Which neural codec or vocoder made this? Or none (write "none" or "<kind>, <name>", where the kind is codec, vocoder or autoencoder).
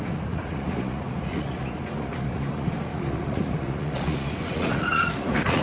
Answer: vocoder, Vocos